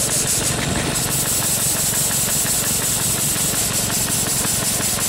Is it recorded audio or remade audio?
recorded